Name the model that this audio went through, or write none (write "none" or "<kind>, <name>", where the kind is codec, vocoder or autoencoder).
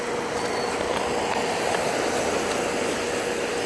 none